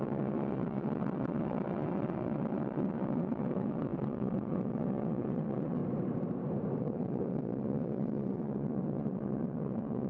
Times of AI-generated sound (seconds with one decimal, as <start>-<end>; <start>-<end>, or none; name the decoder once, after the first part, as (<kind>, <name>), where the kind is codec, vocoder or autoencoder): 0.0-5.8 (vocoder, WaveNeXt); 6.8-10.1